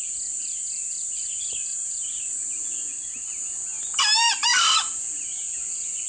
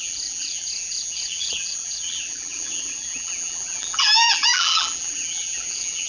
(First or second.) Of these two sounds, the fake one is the second